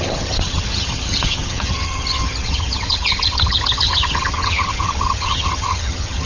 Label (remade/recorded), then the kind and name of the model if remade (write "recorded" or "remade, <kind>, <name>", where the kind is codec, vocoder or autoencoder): remade, vocoder, HiFi-GAN